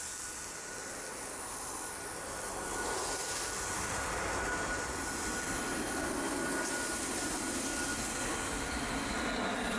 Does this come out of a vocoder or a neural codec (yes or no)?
no